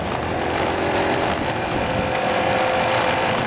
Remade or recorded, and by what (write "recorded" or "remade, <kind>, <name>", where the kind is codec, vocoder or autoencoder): recorded